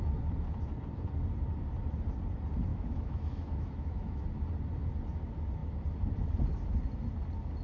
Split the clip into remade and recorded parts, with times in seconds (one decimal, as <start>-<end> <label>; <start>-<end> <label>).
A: 0.0-2.7 recorded; 2.7-4.2 remade; 4.2-7.6 recorded